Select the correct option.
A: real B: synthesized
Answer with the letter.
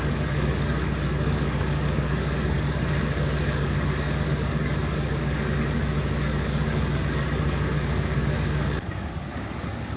B